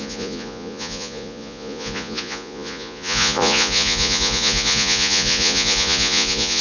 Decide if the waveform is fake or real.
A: fake